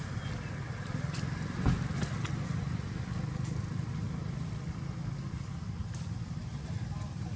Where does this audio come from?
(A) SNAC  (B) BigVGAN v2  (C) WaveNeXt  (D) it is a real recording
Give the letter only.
D